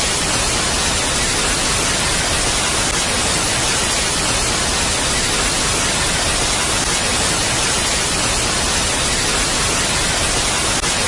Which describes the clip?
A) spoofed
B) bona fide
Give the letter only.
B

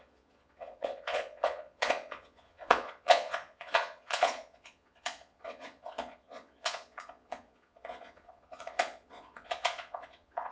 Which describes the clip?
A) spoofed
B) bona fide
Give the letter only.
A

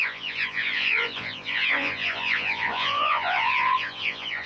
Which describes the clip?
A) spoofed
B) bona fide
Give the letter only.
A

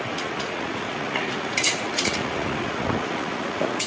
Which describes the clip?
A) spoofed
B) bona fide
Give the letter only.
A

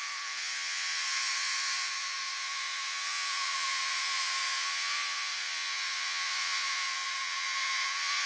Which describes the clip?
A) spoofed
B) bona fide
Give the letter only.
A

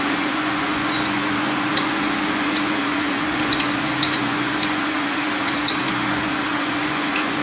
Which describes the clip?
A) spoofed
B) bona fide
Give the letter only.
A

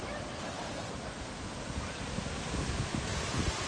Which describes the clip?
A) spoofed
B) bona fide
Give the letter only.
B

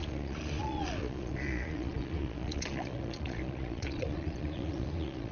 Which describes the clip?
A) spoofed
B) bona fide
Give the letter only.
A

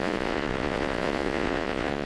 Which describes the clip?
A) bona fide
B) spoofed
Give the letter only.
B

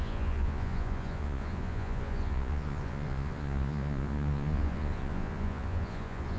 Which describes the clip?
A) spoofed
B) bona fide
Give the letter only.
A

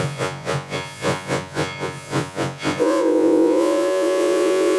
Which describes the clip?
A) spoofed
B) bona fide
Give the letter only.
A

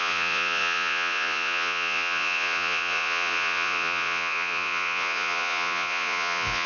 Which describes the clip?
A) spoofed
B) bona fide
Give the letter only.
A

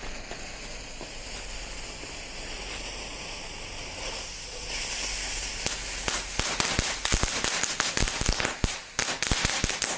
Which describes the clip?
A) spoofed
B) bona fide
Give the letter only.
B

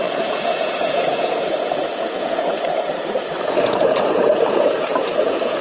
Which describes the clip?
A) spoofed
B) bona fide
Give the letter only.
A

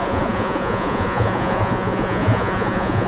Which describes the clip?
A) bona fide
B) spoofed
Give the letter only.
B